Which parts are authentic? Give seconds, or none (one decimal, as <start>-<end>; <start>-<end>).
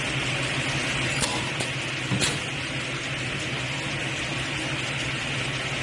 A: 0.0-5.8